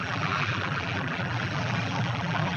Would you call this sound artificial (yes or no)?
yes